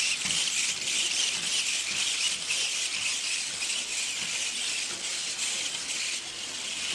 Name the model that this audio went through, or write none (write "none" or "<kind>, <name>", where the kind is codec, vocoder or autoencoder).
none